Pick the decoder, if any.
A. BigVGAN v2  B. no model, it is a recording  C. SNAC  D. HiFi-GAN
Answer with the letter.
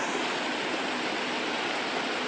B